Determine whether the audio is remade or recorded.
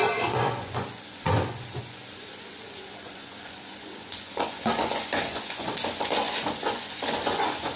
remade